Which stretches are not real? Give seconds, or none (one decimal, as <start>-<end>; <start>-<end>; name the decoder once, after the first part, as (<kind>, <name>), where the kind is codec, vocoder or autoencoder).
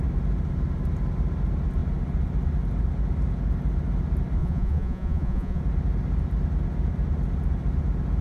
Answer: 4.4-5.6 (vocoder, Vocos)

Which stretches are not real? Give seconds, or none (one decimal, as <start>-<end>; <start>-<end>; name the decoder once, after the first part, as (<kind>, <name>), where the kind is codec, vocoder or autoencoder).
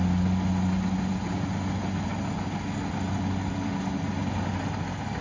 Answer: none